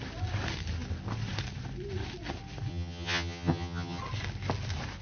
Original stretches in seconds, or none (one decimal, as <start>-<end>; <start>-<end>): 0.0-2.7; 4.0-5.0